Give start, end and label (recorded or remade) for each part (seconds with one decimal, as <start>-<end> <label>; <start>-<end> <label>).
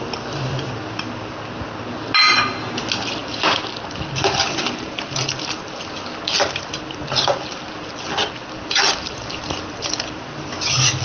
0.0-8.2 recorded; 8.2-9.7 remade; 9.7-11.0 recorded